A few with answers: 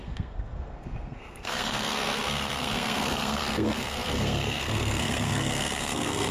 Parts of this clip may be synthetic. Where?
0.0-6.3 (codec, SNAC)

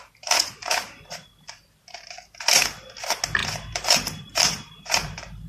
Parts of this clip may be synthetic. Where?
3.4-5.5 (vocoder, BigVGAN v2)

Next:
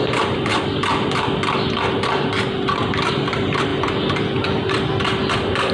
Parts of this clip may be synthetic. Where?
0.0-0.5 (vocoder, BigVGAN v2); 3.1-3.7; 5.3-5.7